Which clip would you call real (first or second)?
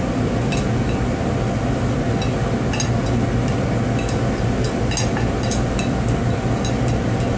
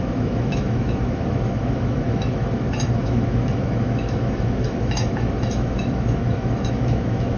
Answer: first